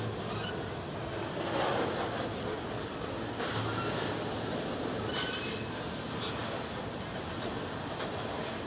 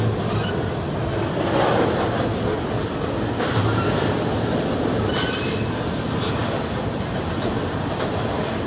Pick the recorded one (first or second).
first